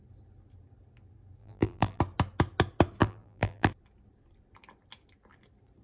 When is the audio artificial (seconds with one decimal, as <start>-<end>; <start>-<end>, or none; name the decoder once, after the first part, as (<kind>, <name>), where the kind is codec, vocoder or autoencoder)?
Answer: 1.4-2.0 (vocoder, BigVGAN v2); 3.0-3.7